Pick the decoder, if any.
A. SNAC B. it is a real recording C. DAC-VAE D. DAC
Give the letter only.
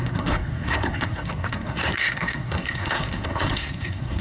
A